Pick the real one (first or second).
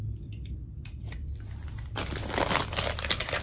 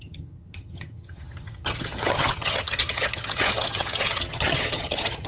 first